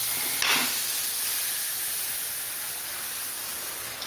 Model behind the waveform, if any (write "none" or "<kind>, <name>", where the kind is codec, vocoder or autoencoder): none